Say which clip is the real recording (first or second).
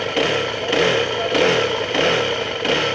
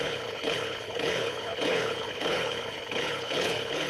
first